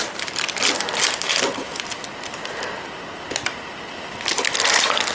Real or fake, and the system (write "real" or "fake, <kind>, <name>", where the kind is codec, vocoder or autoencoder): real